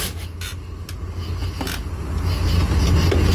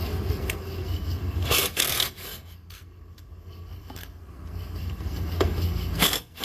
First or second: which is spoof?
second